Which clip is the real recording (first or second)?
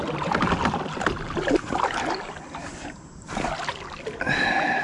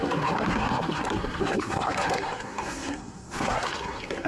first